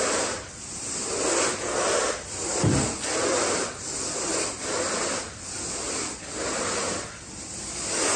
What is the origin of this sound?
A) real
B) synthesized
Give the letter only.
A